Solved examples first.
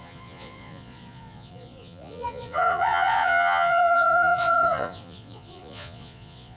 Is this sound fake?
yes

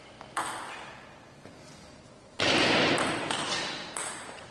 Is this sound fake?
no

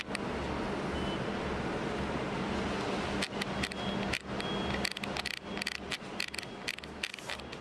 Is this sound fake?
no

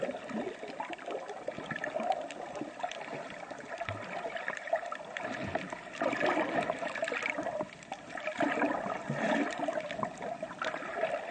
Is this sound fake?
no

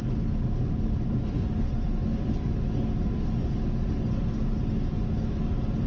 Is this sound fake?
no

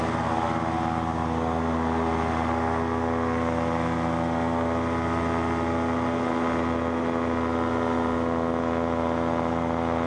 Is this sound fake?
no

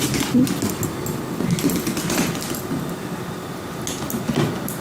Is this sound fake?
no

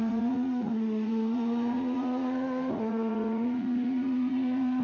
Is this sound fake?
yes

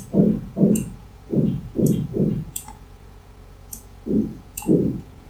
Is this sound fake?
yes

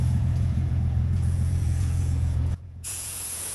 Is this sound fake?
yes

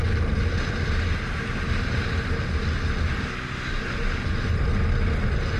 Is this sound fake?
no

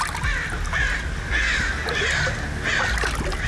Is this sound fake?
no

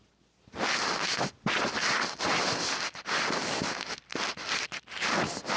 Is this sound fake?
no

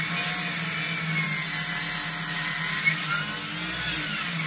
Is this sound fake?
no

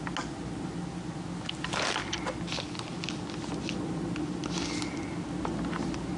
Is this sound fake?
no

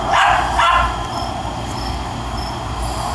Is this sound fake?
no